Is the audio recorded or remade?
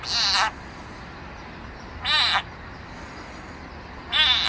recorded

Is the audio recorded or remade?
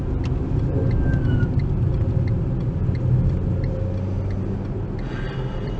recorded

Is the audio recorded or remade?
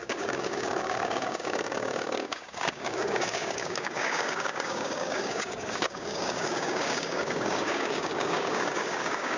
remade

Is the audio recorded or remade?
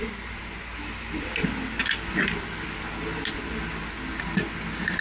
recorded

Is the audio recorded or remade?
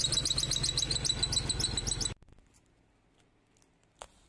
recorded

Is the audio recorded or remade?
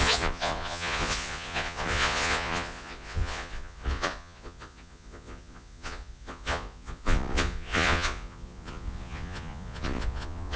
remade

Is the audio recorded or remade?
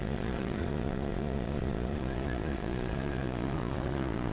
remade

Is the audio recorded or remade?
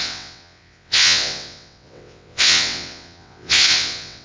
remade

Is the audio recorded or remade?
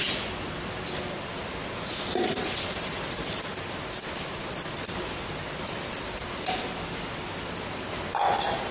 recorded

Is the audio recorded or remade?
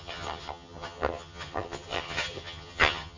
remade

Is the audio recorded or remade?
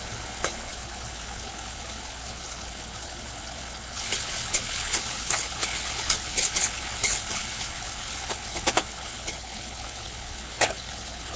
remade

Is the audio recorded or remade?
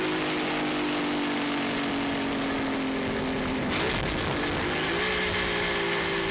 recorded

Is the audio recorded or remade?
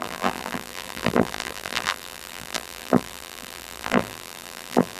remade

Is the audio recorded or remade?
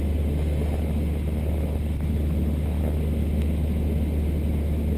recorded